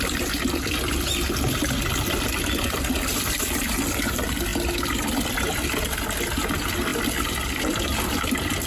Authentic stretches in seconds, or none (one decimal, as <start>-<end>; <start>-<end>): 0.0-8.7